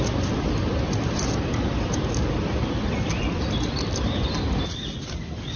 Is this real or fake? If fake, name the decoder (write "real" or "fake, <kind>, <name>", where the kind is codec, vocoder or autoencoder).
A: real